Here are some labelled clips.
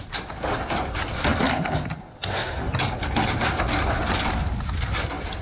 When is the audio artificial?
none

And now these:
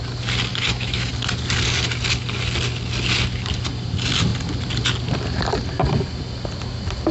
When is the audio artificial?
0.5-1.1 (autoencoder, DAC-VAE)